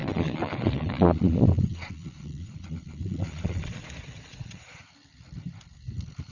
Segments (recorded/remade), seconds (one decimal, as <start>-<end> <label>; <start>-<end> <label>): 0.0-3.8 remade; 3.8-4.3 recorded; 4.3-4.8 remade; 4.8-6.3 recorded